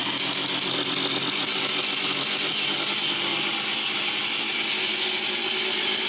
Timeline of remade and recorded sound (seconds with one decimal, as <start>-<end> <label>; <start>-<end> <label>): 0.0-6.1 recorded